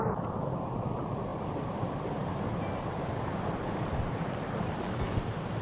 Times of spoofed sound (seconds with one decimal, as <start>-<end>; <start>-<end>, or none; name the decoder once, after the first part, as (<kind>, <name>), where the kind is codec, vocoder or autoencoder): none